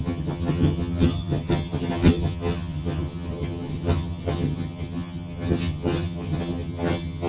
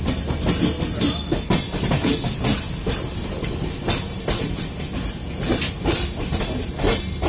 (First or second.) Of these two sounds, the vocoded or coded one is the first